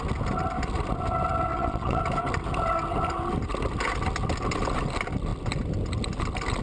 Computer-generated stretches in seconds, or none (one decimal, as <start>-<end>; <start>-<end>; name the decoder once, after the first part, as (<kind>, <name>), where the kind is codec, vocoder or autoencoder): 1.5-2.0 (vocoder, WaveNeXt)